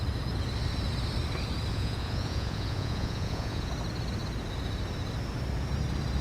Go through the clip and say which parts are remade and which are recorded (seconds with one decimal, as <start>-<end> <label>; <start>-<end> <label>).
0.0-1.7 recorded; 1.7-3.7 remade; 3.7-6.2 recorded